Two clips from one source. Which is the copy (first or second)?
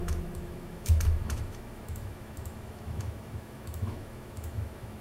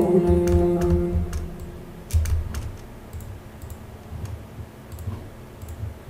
first